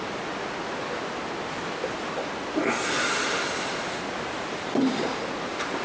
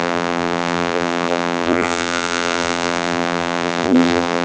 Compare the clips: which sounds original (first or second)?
first